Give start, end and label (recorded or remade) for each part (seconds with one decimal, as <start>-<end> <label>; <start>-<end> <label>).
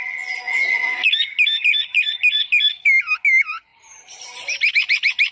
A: 0.0-3.7 recorded; 3.7-4.7 remade; 4.7-5.3 recorded